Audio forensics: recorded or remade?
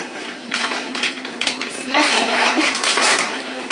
remade